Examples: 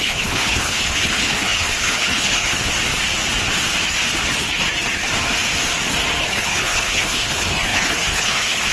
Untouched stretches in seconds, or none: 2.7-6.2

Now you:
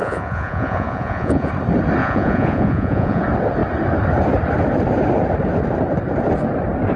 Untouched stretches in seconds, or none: 1.5-2.0; 3.2-7.0

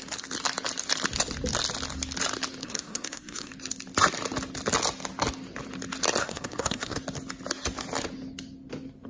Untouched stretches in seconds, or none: 0.0-2.6; 3.5-6.2; 7.0-9.1